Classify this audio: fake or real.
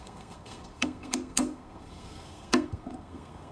fake